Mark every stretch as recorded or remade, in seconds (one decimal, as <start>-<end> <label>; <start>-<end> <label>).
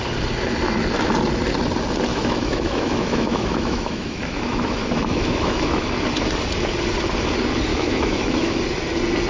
0.0-2.1 recorded; 2.1-5.9 remade; 5.9-7.7 recorded; 7.7-8.6 remade; 8.6-9.3 recorded